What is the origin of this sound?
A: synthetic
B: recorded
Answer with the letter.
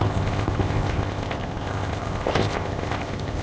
A